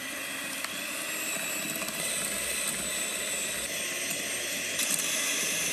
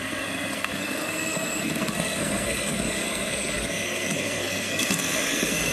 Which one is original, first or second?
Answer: first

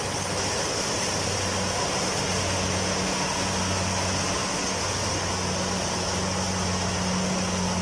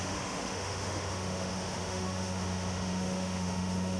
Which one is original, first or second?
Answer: first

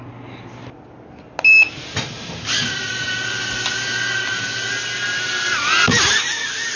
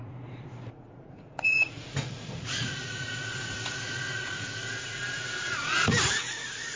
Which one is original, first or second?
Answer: first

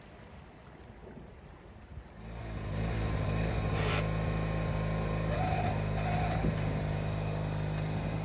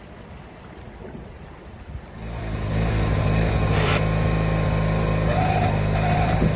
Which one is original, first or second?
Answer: first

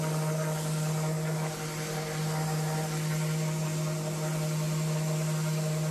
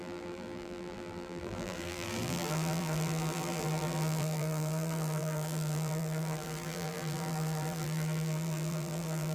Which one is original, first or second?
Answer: first